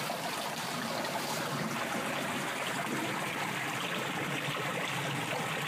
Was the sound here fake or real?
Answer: real